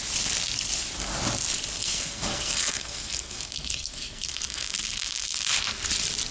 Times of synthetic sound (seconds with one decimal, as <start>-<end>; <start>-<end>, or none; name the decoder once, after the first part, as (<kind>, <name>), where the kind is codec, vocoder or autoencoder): 1.8-5.6 (codec, SNAC)

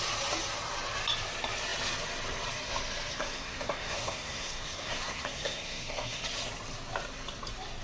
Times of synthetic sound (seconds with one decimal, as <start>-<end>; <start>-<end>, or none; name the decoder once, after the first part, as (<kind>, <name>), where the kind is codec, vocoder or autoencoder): 3.1-6.2 (codec, SNAC)

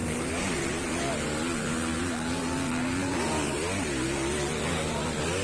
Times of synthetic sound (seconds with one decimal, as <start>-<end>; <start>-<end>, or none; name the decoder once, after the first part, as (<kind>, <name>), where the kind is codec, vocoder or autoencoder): none